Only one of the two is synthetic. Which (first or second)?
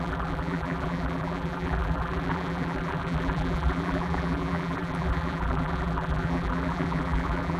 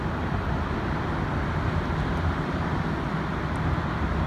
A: first